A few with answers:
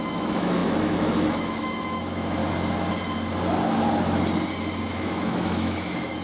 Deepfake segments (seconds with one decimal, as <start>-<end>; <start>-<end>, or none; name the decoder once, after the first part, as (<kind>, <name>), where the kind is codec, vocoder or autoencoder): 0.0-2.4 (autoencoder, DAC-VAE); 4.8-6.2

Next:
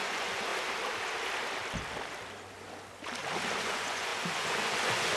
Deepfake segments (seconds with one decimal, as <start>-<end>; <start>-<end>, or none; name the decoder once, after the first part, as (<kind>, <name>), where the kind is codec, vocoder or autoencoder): 0.0-0.5 (vocoder, Vocos); 3.6-5.2

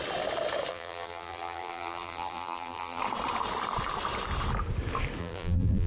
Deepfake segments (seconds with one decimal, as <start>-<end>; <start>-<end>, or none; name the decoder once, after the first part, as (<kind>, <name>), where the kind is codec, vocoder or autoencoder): 0.7-3.0 (vocoder, BigVGAN v2); 5.2-5.9

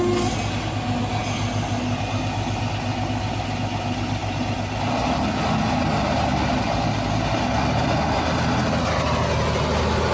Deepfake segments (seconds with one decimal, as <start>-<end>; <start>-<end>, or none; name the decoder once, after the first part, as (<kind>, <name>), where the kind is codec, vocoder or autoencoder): none